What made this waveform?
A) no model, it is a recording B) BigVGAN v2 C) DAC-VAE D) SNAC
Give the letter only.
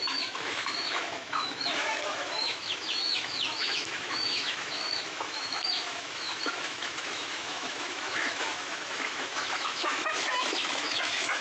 C